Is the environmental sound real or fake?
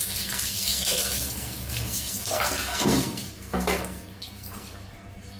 fake